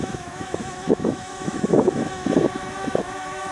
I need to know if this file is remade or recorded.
remade